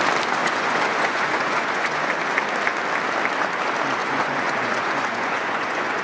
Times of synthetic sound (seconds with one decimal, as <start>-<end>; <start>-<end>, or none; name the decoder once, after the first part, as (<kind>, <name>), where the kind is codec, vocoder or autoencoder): 0.4-2.1 (vocoder, Vocos); 4.0-6.0